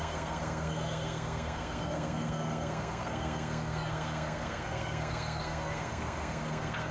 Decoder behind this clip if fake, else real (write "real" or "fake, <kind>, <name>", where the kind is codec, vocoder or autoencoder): fake, codec, SNAC